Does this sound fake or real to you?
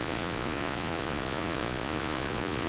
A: fake